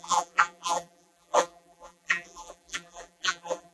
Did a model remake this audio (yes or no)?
yes